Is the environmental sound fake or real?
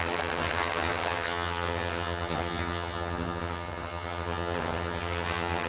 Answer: fake